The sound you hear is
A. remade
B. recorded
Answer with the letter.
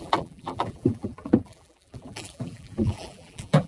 A